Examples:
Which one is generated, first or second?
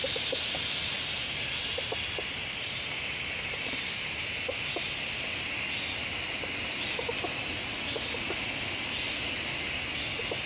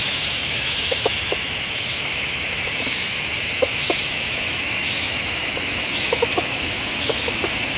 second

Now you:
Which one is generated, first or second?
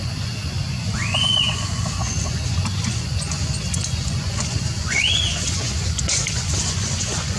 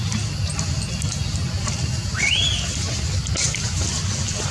first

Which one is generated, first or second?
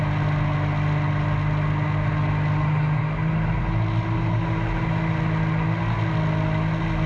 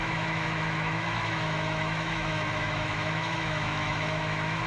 second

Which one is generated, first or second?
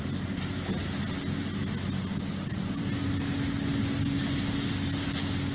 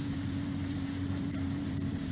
second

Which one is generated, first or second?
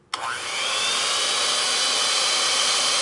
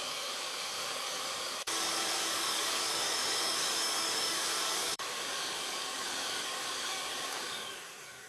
second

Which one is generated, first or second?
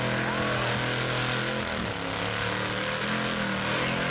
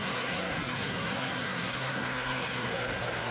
second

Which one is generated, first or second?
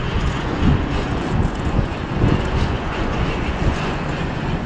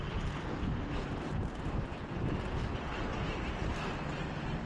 first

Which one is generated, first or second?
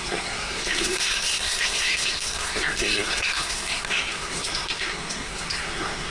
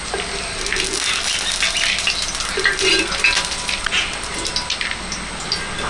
first